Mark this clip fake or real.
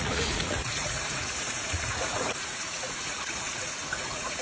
fake